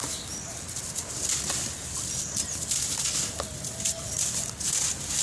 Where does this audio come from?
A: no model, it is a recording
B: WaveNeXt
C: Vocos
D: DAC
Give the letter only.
A